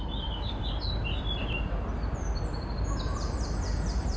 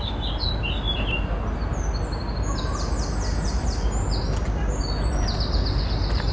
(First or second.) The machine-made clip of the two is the first